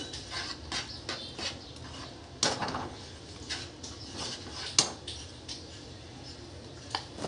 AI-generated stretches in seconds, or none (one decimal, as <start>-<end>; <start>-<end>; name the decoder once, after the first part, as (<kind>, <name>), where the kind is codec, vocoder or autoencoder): 2.6-3.2 (codec, HILCodec)